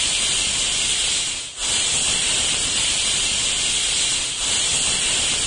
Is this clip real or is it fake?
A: real